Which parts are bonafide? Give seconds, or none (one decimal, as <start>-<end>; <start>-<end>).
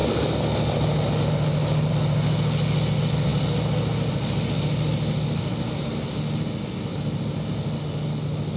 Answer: 0.0-8.6